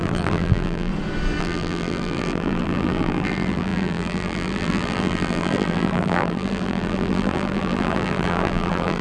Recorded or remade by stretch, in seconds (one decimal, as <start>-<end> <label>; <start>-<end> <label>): 0.0-0.9 remade; 0.9-1.4 recorded; 1.4-9.0 remade